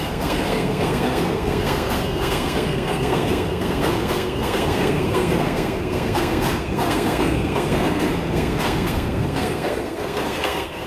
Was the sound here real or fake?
fake